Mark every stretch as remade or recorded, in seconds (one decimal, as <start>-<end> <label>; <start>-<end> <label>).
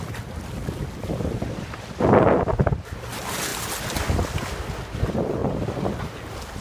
0.0-2.5 recorded; 2.5-3.1 remade; 3.1-5.4 recorded; 5.4-6.0 remade; 6.0-6.6 recorded